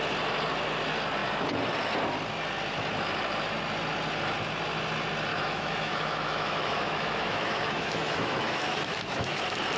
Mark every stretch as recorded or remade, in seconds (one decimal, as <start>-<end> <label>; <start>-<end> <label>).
0.0-5.3 recorded; 5.3-9.4 remade; 9.4-9.8 recorded